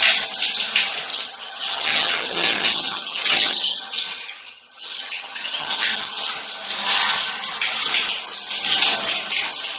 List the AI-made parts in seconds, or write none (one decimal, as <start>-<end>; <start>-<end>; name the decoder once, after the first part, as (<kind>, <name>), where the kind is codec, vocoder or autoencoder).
1.1-6.3 (vocoder, HiFi-GAN)